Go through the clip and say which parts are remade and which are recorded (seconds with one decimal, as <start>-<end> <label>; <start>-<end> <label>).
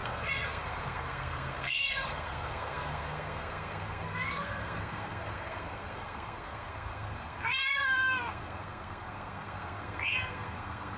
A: 0.0-11.0 remade